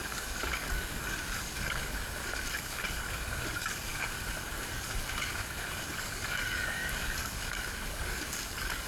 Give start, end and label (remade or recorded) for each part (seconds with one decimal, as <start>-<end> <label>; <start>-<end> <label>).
0.0-8.9 remade